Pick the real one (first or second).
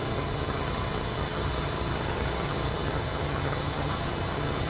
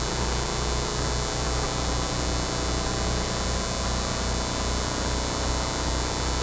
second